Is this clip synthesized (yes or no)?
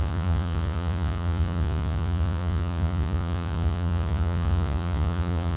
yes